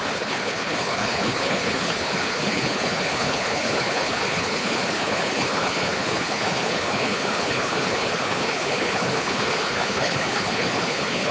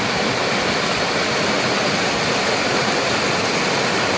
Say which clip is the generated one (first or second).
first